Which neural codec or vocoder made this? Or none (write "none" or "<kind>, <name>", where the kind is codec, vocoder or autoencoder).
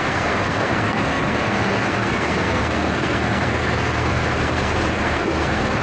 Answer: codec, SNAC